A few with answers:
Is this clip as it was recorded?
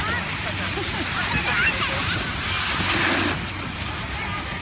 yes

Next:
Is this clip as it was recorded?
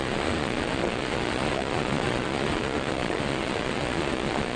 no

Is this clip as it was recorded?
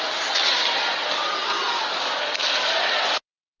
yes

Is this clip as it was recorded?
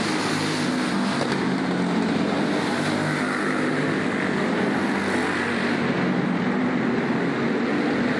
yes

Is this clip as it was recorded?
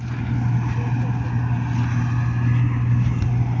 yes